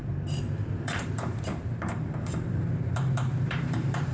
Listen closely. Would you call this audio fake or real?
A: fake